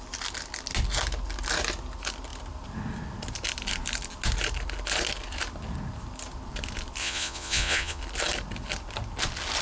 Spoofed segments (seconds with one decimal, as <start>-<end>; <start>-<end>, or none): 7.0-8.0